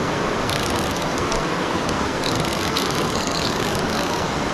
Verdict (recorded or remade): remade